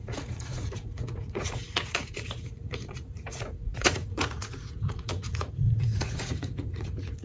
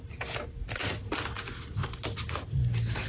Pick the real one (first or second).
second